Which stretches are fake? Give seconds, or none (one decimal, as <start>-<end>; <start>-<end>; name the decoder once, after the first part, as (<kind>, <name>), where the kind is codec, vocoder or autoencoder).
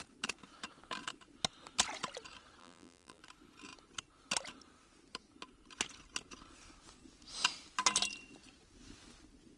2.6-3.2 (vocoder, BigVGAN v2)